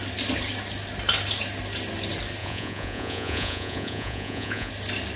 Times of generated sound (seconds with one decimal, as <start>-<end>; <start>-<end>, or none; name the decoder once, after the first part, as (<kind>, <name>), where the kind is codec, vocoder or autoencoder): 2.4-4.7 (vocoder, Vocos)